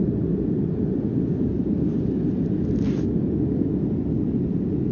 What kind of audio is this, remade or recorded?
recorded